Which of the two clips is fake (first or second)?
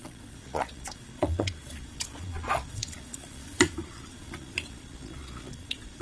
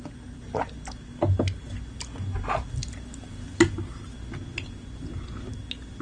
first